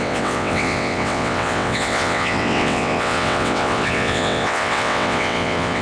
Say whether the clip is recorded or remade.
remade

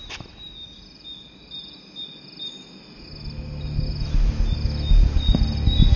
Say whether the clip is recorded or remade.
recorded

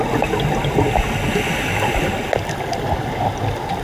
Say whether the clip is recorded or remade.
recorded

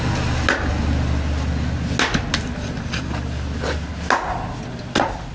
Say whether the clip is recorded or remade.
recorded